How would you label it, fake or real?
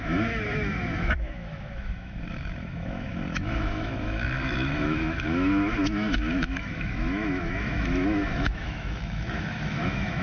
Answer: fake